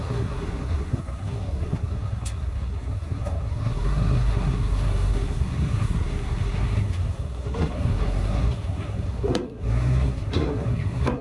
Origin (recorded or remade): remade